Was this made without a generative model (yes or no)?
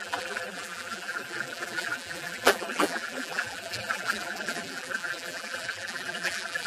no